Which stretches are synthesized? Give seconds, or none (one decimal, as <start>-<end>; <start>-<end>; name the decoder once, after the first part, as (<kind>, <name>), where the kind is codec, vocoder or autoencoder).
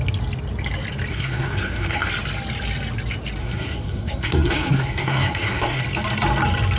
1.1-2.1 (codec, SNAC); 3.4-5.8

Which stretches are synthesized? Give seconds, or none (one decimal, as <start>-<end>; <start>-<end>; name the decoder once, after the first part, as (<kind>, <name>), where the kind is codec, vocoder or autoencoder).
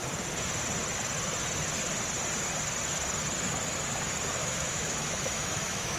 4.4-6.0 (autoencoder, DAC-VAE)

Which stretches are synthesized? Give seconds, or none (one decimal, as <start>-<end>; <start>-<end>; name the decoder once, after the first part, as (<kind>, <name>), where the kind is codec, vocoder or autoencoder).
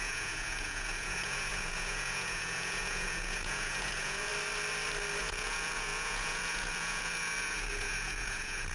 0.0-4.3 (vocoder, Vocos); 5.2-8.7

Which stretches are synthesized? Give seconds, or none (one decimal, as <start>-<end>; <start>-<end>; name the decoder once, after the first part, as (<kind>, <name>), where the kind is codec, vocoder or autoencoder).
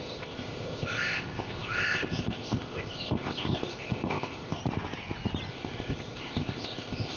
0.0-4.6 (codec, ZipCodec); 5.5-7.2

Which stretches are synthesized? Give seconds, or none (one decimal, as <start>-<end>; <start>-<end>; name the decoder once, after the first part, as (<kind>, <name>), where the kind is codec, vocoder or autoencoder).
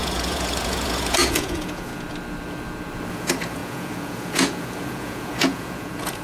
0.0-1.9 (vocoder, Vocos); 3.1-6.2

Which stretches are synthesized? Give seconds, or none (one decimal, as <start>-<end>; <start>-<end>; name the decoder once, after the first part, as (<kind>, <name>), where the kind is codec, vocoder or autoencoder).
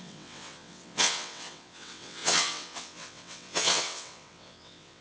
0.0-5.0 (vocoder, WaveNeXt)